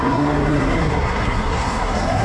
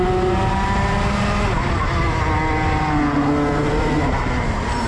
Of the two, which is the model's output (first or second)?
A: first